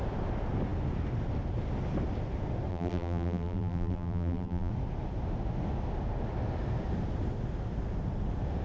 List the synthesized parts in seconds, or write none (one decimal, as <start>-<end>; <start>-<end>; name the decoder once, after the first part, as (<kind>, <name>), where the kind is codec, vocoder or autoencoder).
2.7-4.7 (vocoder, BigVGAN v2)